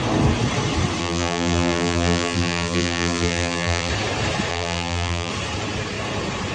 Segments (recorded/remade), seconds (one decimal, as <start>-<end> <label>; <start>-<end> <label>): 0.0-1.0 recorded; 1.0-3.9 remade; 3.9-4.5 recorded; 4.5-5.3 remade; 5.3-6.5 recorded